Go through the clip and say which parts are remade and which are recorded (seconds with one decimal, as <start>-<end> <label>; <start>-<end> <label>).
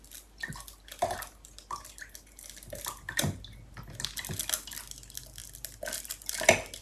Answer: 0.0-6.8 recorded